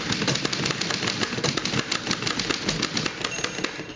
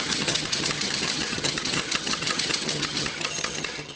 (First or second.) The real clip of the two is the first